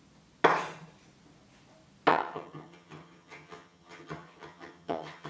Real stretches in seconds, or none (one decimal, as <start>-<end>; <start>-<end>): 0.0-2.1